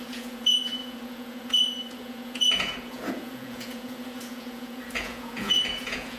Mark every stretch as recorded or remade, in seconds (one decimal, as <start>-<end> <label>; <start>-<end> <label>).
0.0-6.2 remade